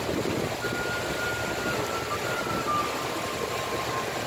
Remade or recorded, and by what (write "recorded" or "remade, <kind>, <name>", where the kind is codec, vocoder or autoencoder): recorded